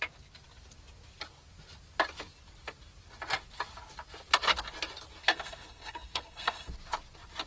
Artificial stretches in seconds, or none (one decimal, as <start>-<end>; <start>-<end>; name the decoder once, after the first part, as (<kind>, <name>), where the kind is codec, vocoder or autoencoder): 5.2-6.7 (codec, SNAC)

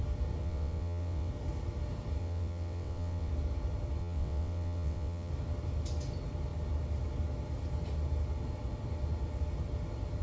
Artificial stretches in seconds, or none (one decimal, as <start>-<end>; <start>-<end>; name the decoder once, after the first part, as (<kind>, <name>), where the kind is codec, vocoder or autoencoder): 0.4-1.3 (vocoder, WaveNeXt); 2.2-3.3; 4.0-5.3

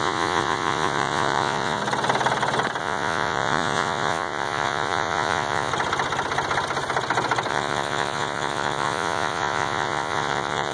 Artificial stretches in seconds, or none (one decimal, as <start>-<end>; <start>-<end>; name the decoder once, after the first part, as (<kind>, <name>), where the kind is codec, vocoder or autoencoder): 0.0-1.8 (vocoder, Vocos); 2.8-5.7; 7.5-10.7

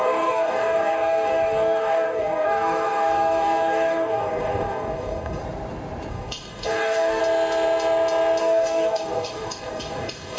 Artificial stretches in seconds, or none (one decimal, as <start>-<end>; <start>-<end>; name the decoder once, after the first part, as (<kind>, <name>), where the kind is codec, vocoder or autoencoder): 0.0-5.4 (codec, DAC); 6.1-7.2; 8.4-10.4